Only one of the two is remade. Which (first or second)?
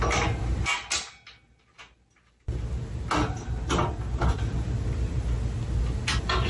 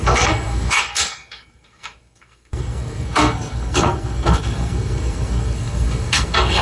second